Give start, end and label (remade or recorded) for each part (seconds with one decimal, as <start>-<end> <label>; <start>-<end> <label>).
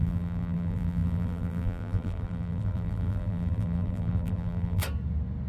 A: 0.0-4.8 remade; 4.8-5.5 recorded